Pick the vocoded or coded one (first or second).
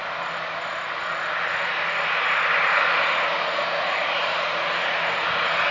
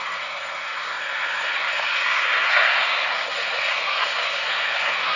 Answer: second